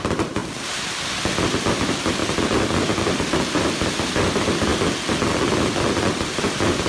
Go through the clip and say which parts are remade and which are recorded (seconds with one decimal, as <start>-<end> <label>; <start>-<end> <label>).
0.0-2.2 remade; 2.2-3.8 recorded; 3.8-4.7 remade; 4.7-6.4 recorded; 6.4-6.9 remade